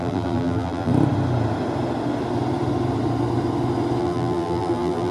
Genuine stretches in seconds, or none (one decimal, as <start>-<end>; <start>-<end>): 0.9-4.0